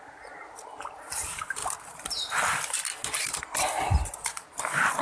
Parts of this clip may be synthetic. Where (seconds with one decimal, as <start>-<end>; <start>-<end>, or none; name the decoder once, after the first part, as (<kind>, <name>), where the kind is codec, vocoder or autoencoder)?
none